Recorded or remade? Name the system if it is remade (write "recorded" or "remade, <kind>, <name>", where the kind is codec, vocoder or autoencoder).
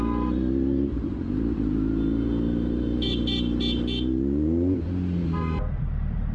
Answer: recorded